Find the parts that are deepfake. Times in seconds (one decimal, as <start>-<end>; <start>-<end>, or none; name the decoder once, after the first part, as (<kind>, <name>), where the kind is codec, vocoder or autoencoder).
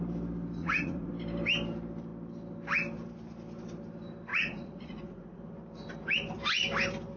0.6-1.1 (vocoder, Vocos); 4.3-5.4